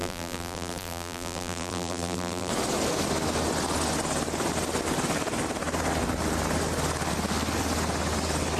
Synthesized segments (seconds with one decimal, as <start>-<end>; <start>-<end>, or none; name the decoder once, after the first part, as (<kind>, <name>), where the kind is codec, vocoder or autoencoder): 0.0-2.5 (vocoder, BigVGAN v2)